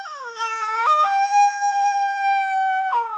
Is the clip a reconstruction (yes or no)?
yes